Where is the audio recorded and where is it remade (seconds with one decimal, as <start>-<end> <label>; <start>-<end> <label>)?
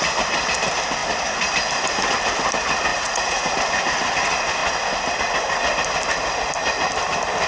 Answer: 0.0-2.9 recorded; 2.9-3.5 remade; 3.5-7.5 recorded